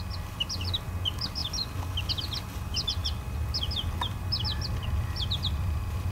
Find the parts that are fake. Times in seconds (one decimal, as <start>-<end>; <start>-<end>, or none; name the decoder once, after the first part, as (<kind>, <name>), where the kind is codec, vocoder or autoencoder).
none